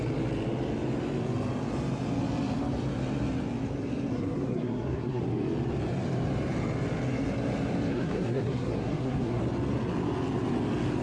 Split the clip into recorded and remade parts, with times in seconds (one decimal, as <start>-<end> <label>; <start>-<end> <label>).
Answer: 0.0-4.1 recorded; 4.1-5.2 remade; 5.2-7.9 recorded; 7.9-9.4 remade; 9.4-11.0 recorded